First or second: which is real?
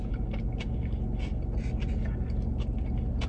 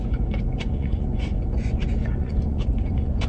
first